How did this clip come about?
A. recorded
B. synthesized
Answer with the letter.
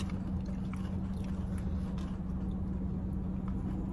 A